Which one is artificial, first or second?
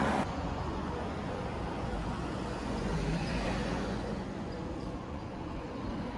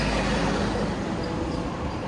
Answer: first